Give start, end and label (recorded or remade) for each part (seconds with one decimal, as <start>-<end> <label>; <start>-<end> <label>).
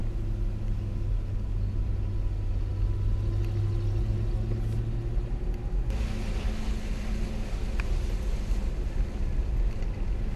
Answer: 0.0-10.4 recorded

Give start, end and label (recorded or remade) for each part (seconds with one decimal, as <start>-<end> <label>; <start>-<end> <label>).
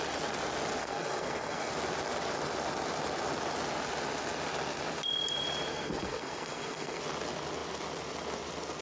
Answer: 0.0-0.8 recorded; 0.8-1.7 remade; 1.7-5.7 recorded; 5.7-7.0 remade; 7.0-8.8 recorded